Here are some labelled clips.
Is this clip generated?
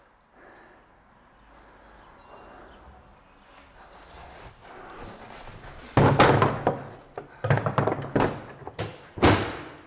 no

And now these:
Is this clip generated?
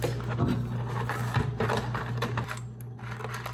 no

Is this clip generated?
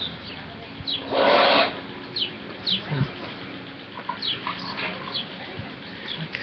no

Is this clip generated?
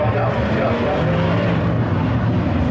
no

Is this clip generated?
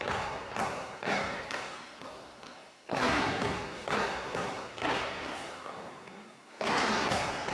yes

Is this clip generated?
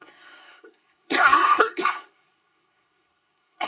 yes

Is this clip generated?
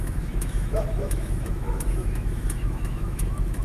yes